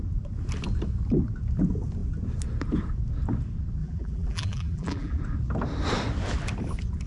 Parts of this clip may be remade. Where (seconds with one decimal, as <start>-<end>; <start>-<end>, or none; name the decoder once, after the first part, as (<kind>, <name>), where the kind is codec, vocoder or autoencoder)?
3.8-5.2 (vocoder, BigVGAN v2)